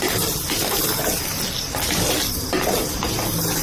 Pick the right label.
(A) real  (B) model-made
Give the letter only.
A